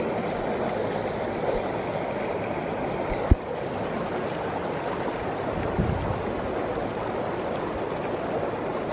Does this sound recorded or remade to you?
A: recorded